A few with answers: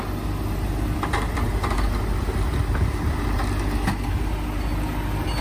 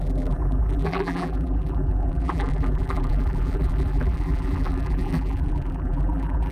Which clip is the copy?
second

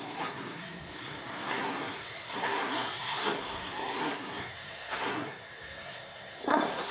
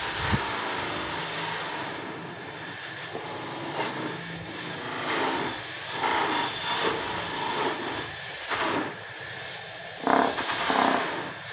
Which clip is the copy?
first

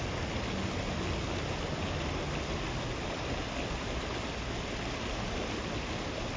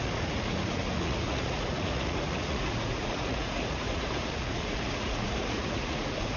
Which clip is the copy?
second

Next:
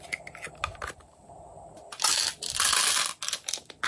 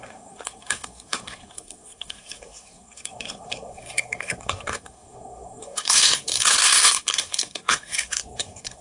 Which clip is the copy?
second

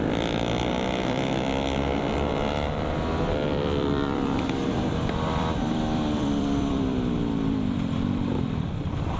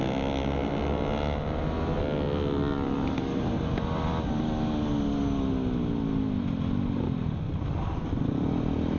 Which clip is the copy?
first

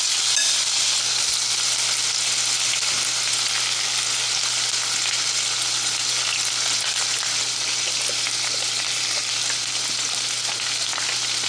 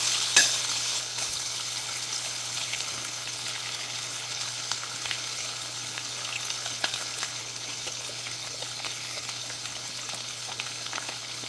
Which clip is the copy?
second